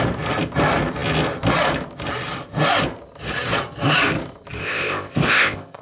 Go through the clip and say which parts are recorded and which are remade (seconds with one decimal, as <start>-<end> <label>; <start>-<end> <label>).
0.0-4.6 recorded; 4.6-5.8 remade